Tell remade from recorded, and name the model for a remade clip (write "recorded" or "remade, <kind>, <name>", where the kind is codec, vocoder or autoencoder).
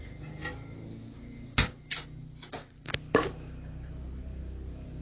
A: recorded